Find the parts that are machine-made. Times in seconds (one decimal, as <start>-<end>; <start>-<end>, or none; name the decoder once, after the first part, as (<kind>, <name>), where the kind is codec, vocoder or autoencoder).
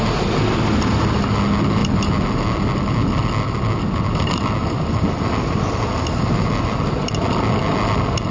none